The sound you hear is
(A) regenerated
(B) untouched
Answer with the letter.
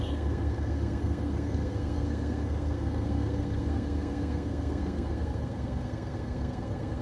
A